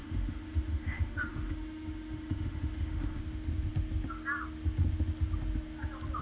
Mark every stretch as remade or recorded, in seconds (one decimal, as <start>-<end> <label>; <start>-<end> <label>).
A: 0.0-3.2 remade; 3.2-6.2 recorded